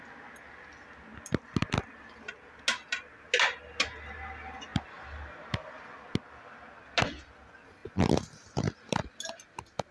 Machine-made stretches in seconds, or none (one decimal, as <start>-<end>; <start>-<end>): none

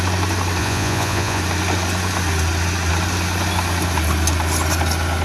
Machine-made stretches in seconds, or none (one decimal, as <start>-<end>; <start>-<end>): 0.6-1.4

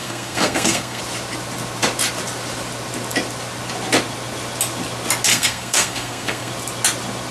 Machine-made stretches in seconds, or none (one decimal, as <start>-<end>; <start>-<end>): 0.0-1.0; 5.3-6.5

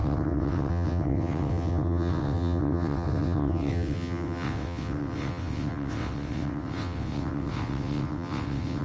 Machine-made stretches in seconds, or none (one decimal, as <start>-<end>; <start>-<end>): 0.0-8.8